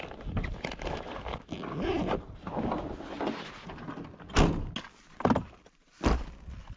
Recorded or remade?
recorded